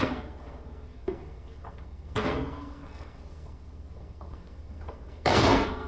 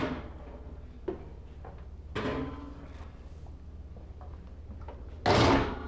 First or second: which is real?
second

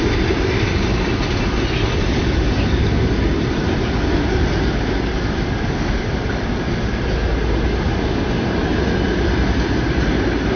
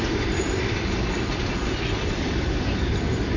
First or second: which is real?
first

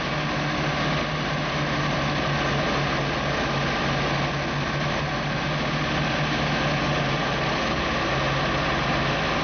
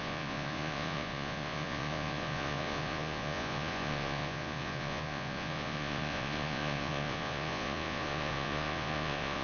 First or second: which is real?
first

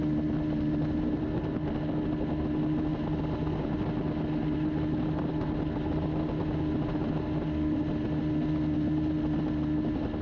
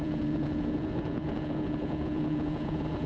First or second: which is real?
first